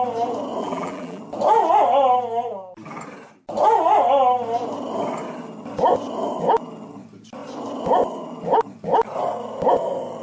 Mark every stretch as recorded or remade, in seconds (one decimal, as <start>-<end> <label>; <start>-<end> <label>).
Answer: 0.0-0.6 recorded; 0.6-1.2 remade; 1.2-10.2 recorded